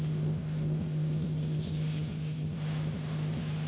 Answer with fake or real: real